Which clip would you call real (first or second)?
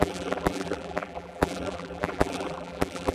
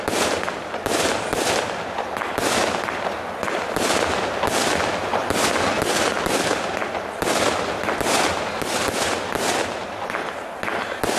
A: second